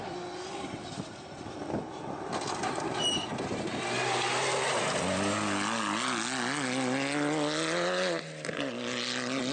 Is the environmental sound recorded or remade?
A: recorded